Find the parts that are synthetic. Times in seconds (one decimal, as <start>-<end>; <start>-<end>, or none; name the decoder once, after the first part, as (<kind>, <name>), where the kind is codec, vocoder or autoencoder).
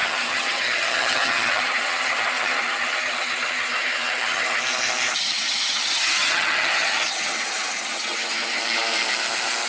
0.0-4.6 (vocoder, HiFi-GAN); 5.1-8.6